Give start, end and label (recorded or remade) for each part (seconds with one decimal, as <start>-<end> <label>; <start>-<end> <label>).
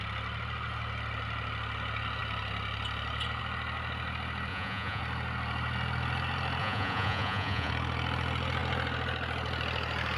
0.0-4.5 recorded; 4.5-5.0 remade; 5.0-6.6 recorded; 6.6-7.7 remade; 7.7-10.2 recorded